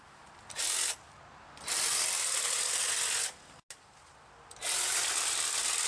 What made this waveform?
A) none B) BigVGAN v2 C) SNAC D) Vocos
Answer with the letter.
A